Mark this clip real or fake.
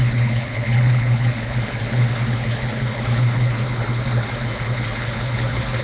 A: fake